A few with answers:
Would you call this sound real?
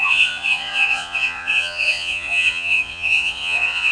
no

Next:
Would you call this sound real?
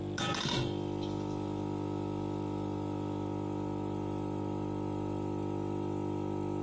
yes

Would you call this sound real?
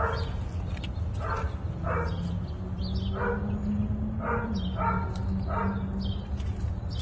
yes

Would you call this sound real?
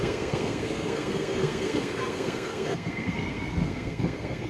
no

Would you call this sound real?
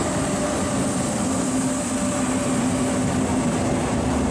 yes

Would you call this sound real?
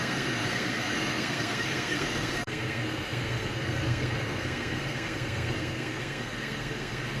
no